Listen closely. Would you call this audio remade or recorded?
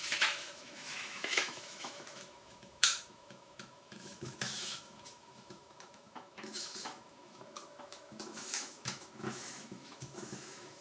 remade